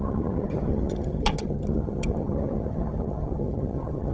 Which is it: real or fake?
fake